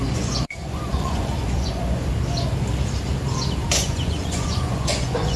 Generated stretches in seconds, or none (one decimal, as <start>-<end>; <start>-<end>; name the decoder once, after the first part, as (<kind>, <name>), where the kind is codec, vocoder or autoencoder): 0.0-2.1 (vocoder, Vocos); 3.7-5.4